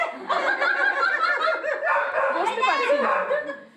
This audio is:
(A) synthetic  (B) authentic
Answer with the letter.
B